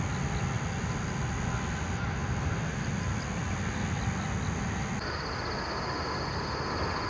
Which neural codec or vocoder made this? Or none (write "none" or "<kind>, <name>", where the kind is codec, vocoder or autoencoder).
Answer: none